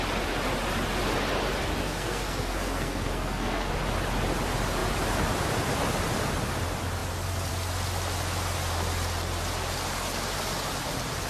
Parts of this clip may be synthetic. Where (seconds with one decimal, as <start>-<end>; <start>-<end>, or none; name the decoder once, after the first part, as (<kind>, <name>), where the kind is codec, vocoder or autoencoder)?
1.8-3.7 (codec, SNAC)